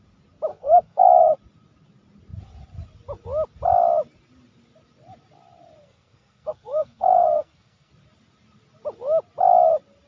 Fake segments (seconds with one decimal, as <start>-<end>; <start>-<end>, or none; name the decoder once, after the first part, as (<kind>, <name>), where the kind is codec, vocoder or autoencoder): 0.5-1.0 (codec, SNAC); 5.8-7.9